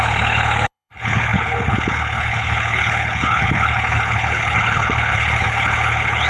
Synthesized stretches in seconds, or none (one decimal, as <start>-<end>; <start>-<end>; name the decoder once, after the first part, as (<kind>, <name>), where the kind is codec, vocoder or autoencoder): 0.0-6.3 (codec, HILCodec)